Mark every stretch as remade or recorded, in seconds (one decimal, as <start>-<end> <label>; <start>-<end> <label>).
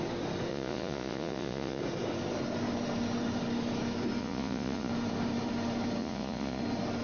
0.0-0.5 recorded; 0.5-1.8 remade; 1.8-4.2 recorded; 4.2-4.9 remade; 4.9-6.0 recorded; 6.0-6.6 remade; 6.6-7.0 recorded